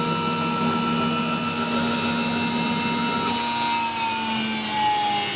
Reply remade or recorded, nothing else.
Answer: recorded